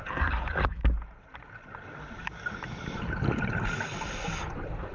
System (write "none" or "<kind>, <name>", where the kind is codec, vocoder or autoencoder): none